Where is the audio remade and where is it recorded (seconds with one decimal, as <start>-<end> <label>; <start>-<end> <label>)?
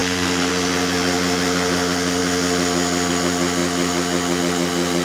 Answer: 0.0-0.5 remade; 0.5-5.0 recorded